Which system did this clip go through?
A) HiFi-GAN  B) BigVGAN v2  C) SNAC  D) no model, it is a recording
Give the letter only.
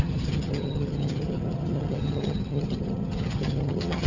A